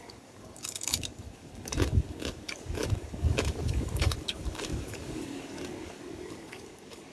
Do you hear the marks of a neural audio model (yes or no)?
yes